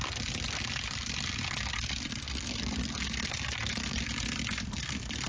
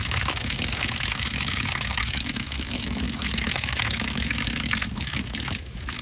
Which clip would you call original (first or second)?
first